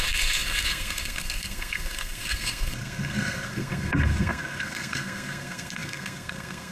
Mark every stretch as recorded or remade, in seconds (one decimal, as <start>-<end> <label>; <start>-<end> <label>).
0.0-6.7 remade